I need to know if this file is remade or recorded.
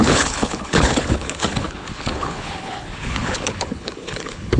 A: remade